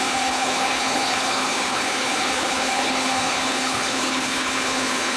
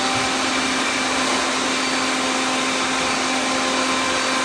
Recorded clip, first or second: second